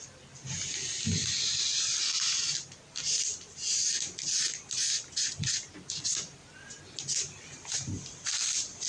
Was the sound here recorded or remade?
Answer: recorded